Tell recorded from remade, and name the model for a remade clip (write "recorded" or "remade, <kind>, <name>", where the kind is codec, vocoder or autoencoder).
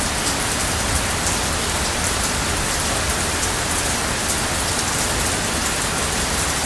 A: recorded